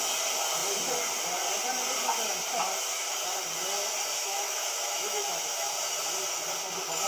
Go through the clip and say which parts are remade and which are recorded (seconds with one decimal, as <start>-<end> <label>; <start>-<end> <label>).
0.0-4.2 recorded; 4.2-5.7 remade; 5.7-7.1 recorded